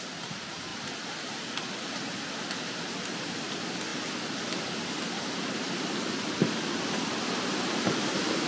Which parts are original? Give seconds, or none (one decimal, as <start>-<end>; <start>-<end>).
0.0-8.5

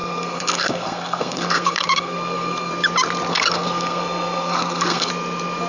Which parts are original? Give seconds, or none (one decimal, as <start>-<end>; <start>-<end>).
2.7-3.3; 5.1-5.7

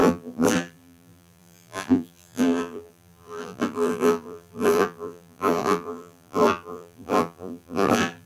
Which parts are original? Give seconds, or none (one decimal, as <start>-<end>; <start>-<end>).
none

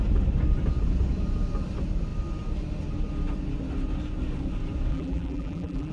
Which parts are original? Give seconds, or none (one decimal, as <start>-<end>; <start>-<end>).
0.0-4.9

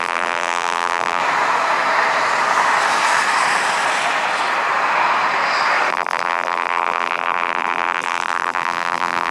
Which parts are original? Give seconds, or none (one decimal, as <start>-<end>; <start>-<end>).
1.2-5.9